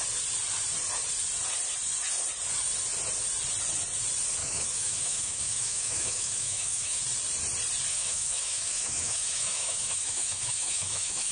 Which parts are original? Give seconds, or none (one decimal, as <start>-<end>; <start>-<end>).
0.0-4.4; 7.0-7.9